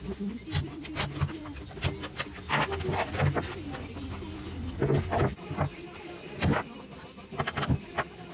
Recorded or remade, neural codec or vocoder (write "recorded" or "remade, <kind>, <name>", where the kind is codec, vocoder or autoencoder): recorded